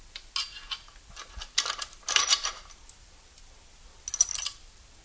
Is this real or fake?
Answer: real